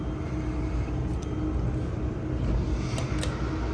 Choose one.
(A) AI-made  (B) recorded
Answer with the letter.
B